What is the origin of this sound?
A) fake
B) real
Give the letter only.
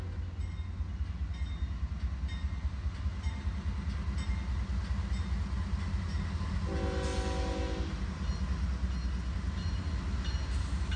B